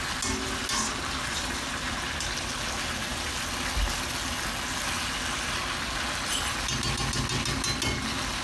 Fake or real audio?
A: real